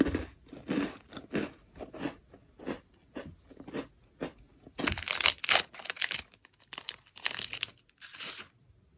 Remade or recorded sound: recorded